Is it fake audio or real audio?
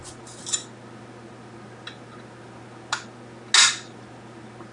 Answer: real